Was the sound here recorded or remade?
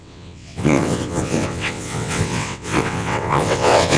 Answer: remade